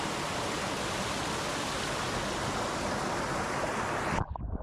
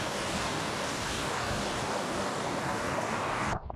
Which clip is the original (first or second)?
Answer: first